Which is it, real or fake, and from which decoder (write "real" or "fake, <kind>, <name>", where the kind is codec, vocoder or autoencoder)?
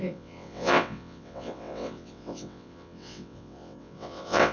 fake, vocoder, WaveNeXt